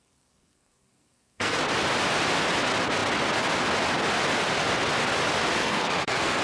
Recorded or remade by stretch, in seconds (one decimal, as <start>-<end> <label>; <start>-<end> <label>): 0.0-1.6 remade; 1.6-5.6 recorded; 5.6-6.4 remade